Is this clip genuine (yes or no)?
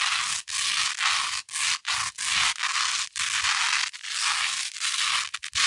yes